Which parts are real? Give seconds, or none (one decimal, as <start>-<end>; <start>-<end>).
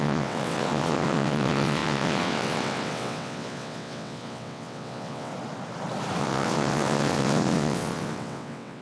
5.3-6.2